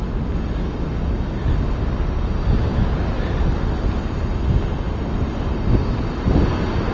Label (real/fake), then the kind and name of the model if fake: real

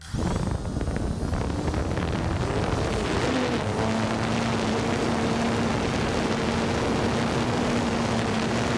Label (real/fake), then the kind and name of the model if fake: real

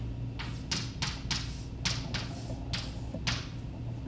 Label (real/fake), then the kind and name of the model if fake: real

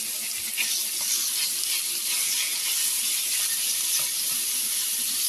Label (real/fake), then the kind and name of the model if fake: real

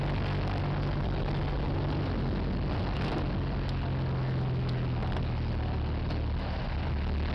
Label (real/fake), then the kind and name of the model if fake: real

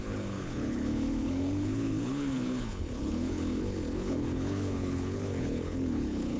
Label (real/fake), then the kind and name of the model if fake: fake, codec, HILCodec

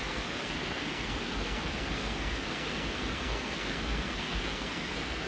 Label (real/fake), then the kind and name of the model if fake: fake, codec, SNAC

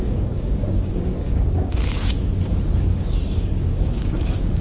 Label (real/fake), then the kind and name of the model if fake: fake, codec, DAC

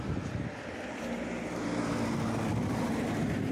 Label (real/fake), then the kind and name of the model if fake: real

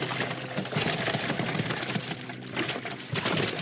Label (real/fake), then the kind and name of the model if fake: real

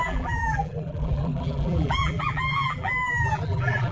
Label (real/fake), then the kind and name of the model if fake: fake, vocoder, BigVGAN v2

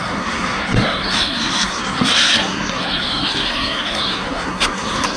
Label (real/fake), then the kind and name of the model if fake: fake, codec, SNAC